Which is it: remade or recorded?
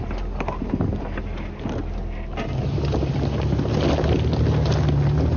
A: recorded